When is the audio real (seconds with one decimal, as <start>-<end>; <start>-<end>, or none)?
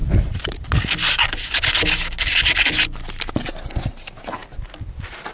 0.0-5.3